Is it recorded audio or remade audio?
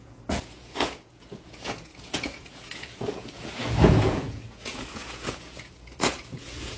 remade